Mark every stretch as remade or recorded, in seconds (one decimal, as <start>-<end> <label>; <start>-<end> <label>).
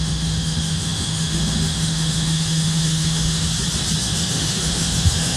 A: 0.0-3.5 remade; 3.5-4.0 recorded; 4.0-5.4 remade